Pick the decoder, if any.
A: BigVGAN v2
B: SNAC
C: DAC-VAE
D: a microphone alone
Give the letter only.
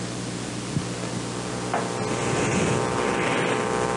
D